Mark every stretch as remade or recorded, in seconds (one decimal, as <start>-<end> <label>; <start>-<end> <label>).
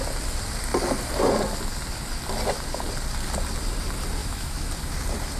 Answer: 0.0-4.2 recorded; 4.2-4.7 remade; 4.7-5.4 recorded